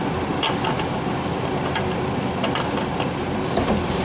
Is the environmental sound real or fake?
real